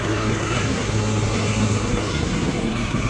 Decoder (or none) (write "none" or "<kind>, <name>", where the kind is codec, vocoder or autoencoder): codec, SNAC